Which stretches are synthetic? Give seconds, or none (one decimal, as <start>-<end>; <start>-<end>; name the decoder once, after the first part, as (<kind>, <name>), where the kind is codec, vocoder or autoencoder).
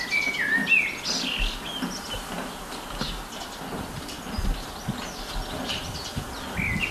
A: none